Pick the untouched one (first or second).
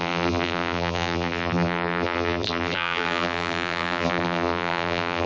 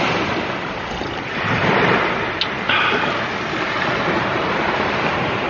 second